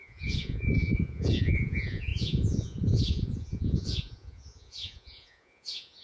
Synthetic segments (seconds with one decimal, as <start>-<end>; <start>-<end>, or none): 0.0-6.0